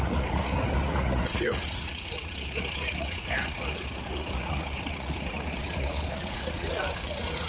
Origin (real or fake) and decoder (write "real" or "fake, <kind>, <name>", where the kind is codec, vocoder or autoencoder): fake, vocoder, Vocos